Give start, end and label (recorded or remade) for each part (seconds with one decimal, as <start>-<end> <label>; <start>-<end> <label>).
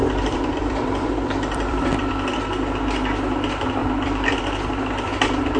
0.0-2.1 remade; 2.1-3.8 recorded; 3.8-4.4 remade; 4.4-5.6 recorded